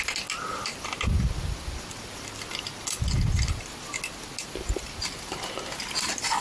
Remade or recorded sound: recorded